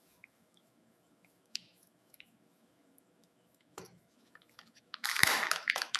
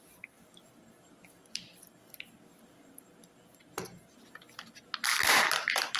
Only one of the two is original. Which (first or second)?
second